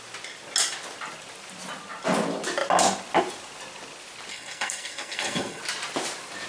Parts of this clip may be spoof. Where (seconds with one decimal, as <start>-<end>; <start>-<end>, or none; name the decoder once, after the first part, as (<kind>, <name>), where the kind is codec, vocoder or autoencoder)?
4.3-5.6 (codec, SNAC)